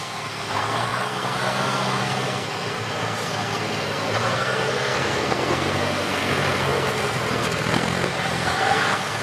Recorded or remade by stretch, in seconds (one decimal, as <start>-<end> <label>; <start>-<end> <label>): 0.0-9.2 remade